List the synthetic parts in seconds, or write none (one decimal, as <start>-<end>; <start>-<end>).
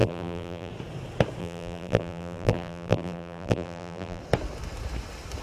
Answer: 0.0-0.7; 1.4-4.2